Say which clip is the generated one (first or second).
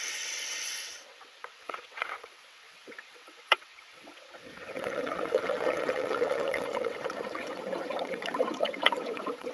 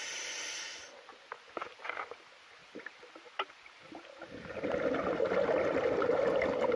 first